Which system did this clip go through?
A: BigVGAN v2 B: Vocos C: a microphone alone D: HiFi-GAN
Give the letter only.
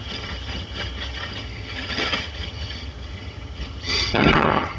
D